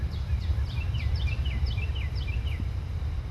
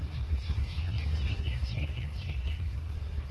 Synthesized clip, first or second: second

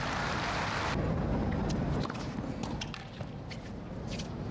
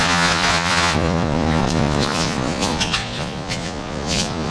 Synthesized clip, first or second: second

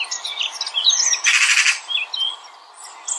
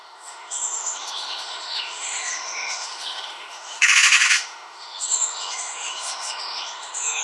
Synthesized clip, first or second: second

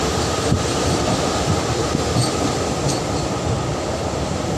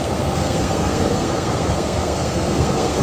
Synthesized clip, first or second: second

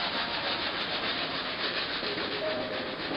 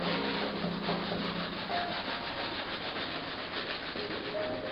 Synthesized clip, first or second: first